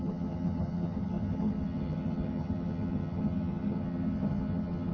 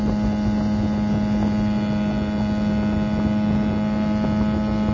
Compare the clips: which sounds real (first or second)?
second